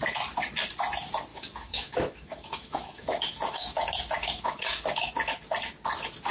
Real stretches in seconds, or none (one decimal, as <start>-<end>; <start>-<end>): 0.0-1.3; 5.1-6.3